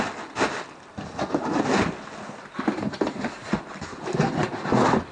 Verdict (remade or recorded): recorded